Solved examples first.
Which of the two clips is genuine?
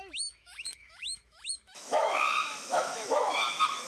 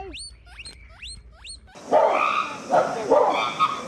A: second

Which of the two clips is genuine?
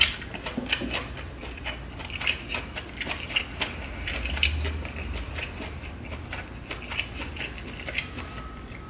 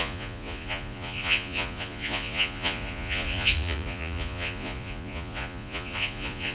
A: first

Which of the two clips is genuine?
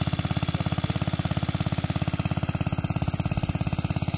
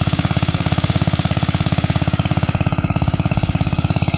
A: first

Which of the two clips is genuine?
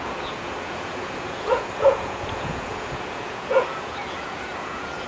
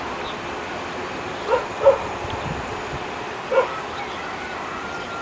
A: second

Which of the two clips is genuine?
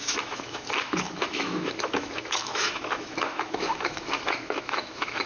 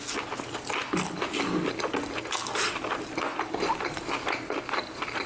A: second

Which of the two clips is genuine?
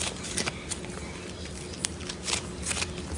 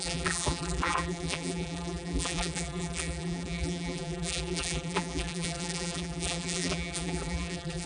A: first